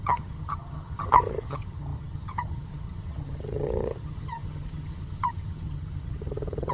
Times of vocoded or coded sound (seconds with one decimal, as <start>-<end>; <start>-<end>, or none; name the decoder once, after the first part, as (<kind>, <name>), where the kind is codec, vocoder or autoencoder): 0.0-6.7 (vocoder, HiFi-GAN)